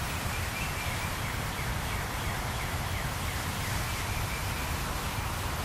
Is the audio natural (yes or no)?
no